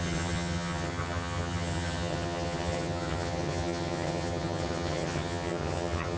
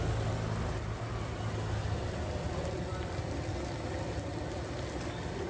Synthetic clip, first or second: first